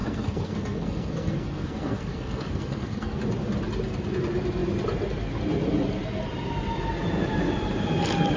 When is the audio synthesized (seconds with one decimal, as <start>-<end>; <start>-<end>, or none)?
0.0-3.2